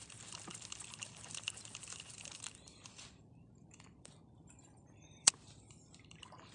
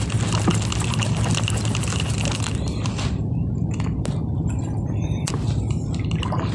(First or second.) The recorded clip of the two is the second